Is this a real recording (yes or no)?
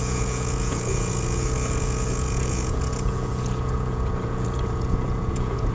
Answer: no